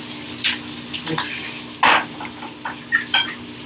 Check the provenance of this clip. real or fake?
real